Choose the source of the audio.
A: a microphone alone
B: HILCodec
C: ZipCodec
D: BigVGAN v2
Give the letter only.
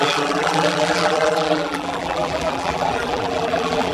D